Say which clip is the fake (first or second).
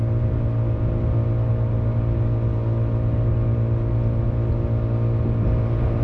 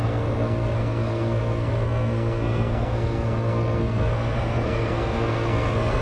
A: second